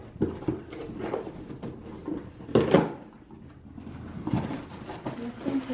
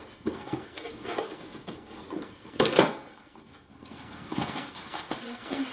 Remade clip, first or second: second